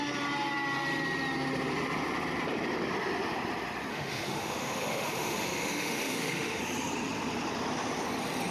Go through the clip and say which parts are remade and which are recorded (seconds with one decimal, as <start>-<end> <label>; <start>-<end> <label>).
0.0-3.9 recorded; 3.9-6.6 remade; 6.6-8.5 recorded